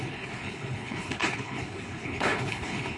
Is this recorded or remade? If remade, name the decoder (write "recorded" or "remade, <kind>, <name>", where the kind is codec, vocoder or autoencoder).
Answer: remade, codec, HILCodec